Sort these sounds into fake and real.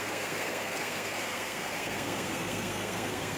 fake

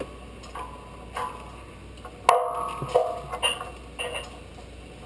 real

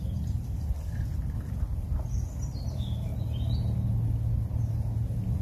real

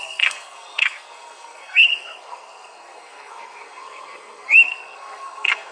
fake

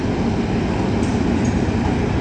real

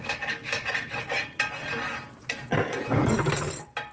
real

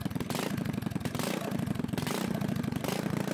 real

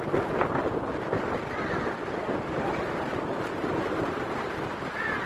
real